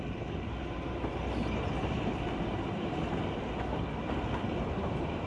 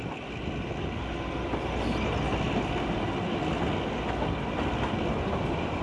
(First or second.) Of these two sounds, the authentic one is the second